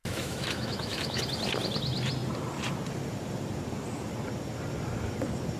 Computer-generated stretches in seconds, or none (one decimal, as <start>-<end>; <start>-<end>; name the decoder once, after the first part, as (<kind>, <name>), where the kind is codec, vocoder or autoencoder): 0.0-1.2 (autoencoder, DAC-VAE)